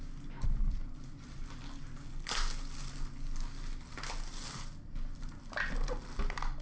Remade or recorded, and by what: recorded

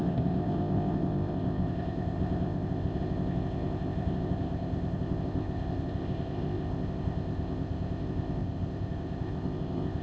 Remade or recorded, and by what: remade, codec, ZipCodec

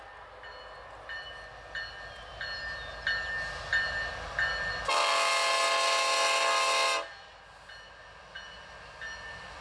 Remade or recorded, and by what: recorded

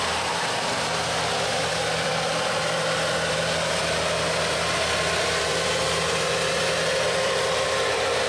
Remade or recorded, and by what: remade, vocoder, BigVGAN v2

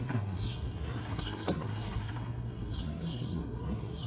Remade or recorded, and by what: remade, codec, SNAC